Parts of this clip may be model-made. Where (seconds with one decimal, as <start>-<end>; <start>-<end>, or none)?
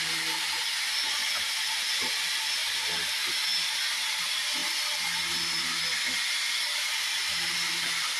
none